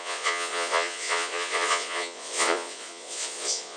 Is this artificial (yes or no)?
yes